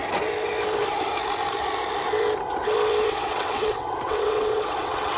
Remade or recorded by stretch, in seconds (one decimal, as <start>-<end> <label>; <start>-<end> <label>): 0.0-3.1 recorded; 3.1-5.2 remade